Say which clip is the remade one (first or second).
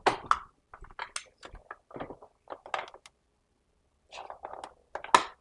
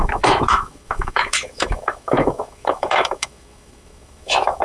second